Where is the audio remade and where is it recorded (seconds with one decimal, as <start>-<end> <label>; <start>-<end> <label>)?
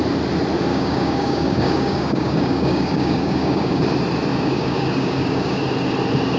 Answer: 0.0-0.7 recorded; 0.7-3.8 remade; 3.8-4.3 recorded; 4.3-5.6 remade; 5.6-6.4 recorded